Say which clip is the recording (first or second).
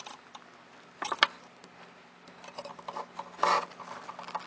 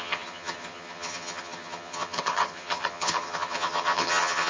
first